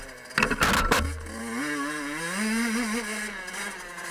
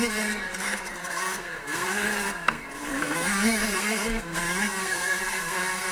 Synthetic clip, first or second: second